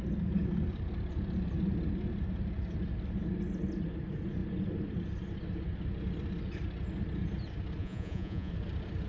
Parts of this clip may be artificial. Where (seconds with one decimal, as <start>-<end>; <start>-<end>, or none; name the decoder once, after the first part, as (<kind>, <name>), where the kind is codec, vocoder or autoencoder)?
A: 7.8-8.5 (vocoder, Vocos)